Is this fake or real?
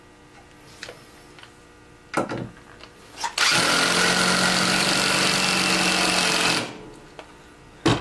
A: real